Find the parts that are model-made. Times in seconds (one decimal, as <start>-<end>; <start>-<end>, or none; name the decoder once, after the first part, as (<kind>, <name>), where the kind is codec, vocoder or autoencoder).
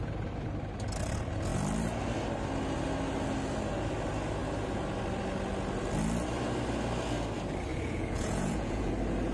7.7-8.9 (vocoder, Vocos)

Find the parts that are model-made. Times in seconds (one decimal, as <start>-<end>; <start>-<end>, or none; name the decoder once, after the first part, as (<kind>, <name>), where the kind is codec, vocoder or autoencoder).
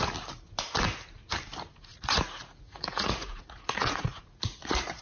1.9-5.0 (vocoder, Vocos)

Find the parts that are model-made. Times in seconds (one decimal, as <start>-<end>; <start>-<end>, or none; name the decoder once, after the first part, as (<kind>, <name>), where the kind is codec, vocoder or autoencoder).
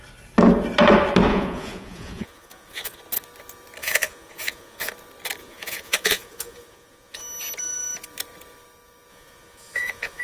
1.3-3.0 (vocoder, Vocos); 3.8-4.9; 5.4-7.2; 9.1-10.2